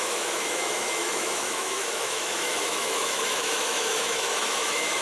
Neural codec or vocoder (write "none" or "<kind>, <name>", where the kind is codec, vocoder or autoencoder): autoencoder, DAC-VAE